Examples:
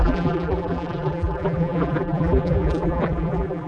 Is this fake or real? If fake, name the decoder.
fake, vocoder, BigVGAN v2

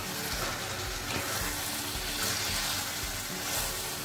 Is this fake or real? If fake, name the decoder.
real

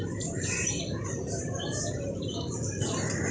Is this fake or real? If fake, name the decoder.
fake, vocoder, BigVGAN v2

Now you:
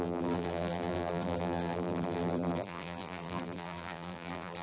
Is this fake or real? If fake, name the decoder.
fake, vocoder, BigVGAN v2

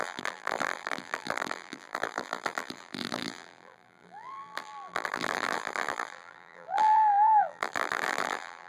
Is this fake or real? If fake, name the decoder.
fake, vocoder, BigVGAN v2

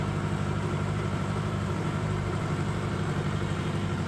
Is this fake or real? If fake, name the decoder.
fake, vocoder, BigVGAN v2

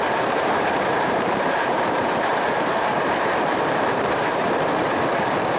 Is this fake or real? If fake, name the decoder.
fake, vocoder, BigVGAN v2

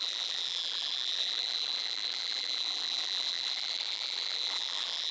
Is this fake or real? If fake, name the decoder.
fake, vocoder, BigVGAN v2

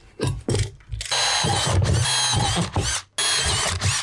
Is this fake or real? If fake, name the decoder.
real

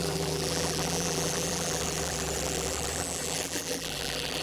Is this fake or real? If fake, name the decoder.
fake, vocoder, BigVGAN v2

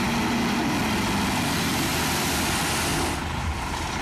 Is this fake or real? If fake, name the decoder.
real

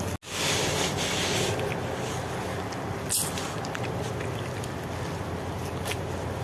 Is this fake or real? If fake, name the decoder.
real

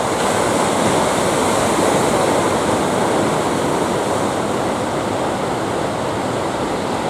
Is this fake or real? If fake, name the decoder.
real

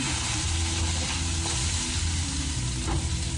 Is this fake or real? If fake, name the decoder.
real